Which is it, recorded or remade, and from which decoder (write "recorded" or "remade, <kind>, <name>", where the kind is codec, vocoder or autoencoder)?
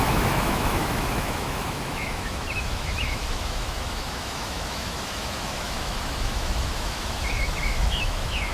remade, autoencoder, DAC-VAE